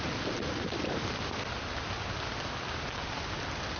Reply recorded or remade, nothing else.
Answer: recorded